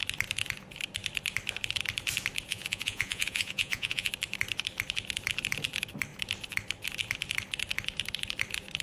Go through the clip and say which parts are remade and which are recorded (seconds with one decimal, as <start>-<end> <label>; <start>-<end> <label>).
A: 0.0-2.5 recorded; 2.5-4.1 remade; 4.1-8.8 recorded